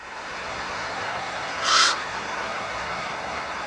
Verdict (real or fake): fake